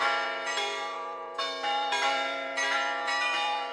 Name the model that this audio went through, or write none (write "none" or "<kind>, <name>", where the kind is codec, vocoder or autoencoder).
vocoder, BigVGAN v2